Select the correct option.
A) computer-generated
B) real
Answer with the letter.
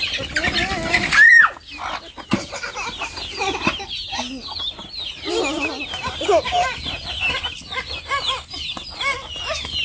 B